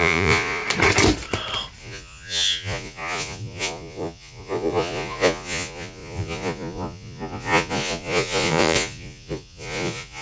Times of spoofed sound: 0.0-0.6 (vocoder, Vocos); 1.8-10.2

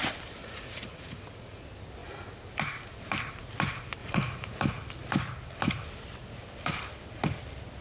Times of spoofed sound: 0.4-1.6 (vocoder, Vocos); 4.0-4.6

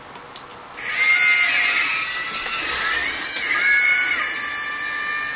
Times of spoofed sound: none

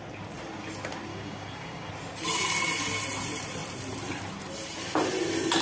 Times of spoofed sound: 1.1-1.9 (codec, DAC)

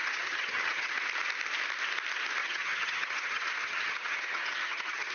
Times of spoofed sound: 0.0-1.0 (vocoder, HiFi-GAN); 2.4-5.1

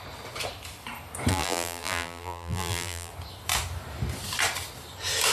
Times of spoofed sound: 1.3-3.1 (vocoder, BigVGAN v2)

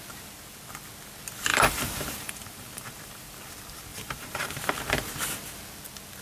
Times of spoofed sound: 1.5-3.5 (vocoder, BigVGAN v2); 3.9-4.7